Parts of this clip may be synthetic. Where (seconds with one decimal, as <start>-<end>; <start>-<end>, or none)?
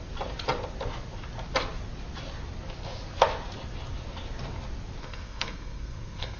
5.0-6.4